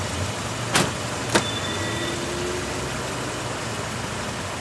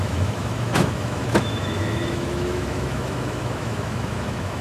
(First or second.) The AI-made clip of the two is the second